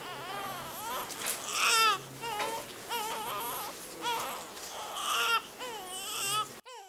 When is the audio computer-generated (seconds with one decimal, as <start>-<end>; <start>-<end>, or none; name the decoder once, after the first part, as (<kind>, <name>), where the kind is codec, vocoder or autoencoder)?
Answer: none